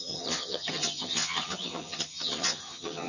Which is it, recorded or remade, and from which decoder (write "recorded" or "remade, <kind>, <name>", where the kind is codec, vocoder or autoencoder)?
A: remade, vocoder, HiFi-GAN